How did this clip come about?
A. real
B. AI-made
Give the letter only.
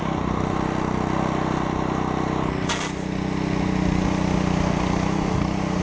A